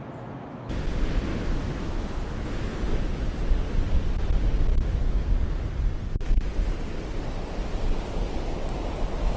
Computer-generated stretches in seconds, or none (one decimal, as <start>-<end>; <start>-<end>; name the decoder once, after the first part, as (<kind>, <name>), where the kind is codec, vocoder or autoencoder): 1.3-3.3 (autoencoder, DAC-VAE); 4.7-5.2